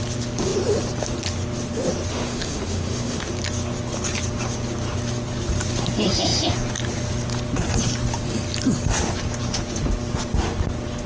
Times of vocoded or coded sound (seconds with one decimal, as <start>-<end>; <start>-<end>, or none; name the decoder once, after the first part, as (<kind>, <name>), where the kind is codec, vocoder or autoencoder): 2.1-3.3 (autoencoder, DAC-VAE)